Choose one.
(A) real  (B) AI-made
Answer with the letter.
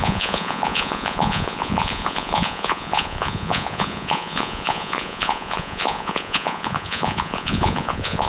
B